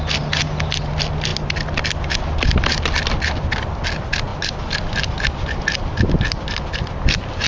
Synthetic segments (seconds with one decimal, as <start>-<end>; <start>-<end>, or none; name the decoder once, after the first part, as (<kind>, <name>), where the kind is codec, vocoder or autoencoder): none